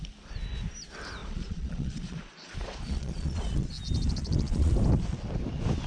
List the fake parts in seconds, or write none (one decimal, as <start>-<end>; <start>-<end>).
1.2-3.7; 4.2-4.7